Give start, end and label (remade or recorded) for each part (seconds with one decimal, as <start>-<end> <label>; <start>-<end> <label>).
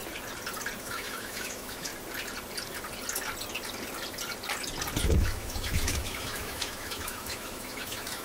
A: 0.0-0.8 recorded; 0.8-1.9 remade; 1.9-5.0 recorded; 5.0-8.2 remade